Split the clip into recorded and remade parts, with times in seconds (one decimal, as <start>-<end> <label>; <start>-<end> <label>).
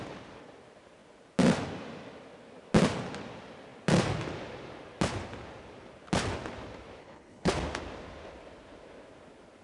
0.0-7.0 recorded; 7.0-7.5 remade; 7.5-9.6 recorded